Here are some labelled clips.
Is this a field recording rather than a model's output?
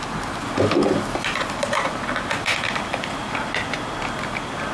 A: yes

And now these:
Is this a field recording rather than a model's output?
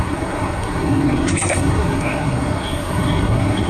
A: no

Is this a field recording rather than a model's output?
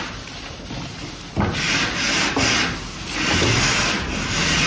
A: yes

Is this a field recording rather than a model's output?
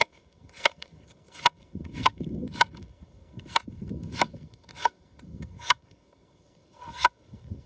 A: no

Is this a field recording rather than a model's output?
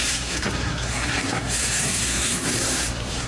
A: no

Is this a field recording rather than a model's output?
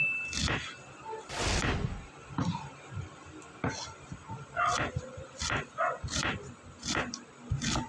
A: yes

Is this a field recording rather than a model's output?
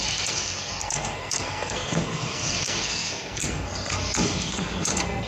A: no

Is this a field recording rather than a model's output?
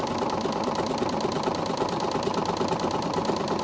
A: yes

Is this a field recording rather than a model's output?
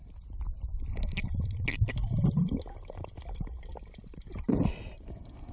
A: yes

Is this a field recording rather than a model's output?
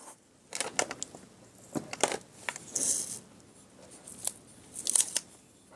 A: yes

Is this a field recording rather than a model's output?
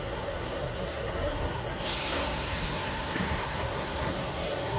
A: no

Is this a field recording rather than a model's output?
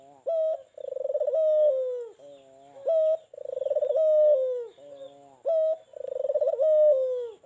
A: yes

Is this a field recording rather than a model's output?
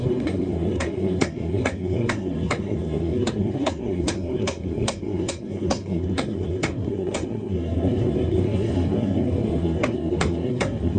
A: no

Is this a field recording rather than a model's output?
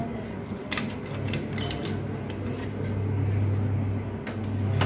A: yes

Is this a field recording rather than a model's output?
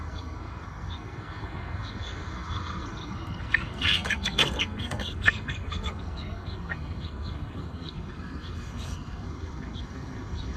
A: no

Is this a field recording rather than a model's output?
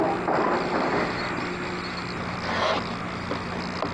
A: yes